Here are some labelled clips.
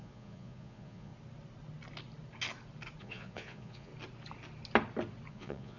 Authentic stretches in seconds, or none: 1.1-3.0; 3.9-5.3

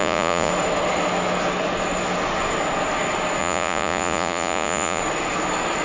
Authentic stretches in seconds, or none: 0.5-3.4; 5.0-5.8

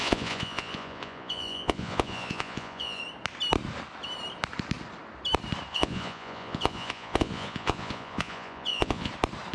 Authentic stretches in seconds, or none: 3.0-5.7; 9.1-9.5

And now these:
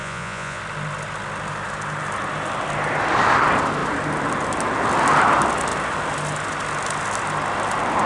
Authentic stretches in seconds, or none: 0.6-8.1

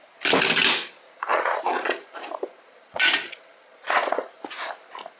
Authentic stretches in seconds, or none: 0.0-1.3; 4.3-5.2

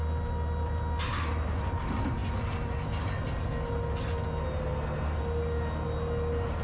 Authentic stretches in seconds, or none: 0.0-6.6

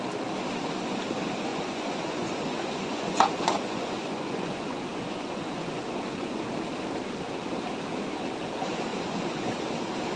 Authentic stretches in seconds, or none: 0.0-1.5; 6.5-8.9; 9.6-10.2

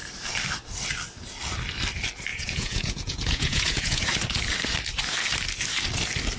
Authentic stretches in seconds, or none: 0.0-2.3; 4.0-6.4